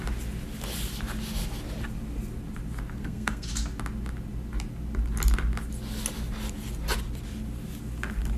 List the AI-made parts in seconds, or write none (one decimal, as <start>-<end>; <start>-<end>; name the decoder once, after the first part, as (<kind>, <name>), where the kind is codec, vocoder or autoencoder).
3.0-3.5 (codec, SNAC)